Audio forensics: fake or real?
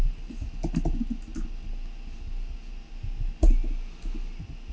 real